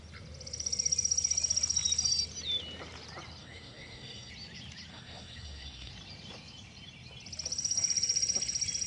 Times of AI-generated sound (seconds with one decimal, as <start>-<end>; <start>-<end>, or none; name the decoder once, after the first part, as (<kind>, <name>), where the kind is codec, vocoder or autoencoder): 3.4-4.3 (codec, SNAC); 4.9-5.9